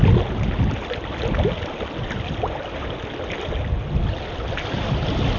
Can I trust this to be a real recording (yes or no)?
yes